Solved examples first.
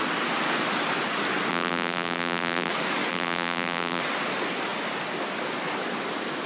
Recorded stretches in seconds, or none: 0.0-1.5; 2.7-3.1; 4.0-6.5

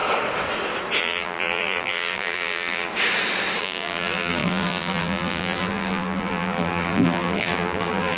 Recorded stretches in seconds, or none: 0.0-1.0; 2.9-3.6